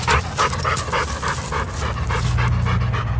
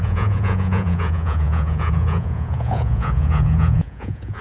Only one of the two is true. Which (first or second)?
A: first